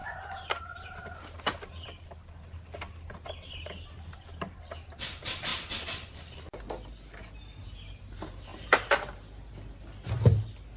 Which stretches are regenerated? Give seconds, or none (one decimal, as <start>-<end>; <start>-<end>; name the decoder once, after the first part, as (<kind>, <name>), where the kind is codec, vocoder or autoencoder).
0.0-1.2 (vocoder, BigVGAN v2); 8.5-10.4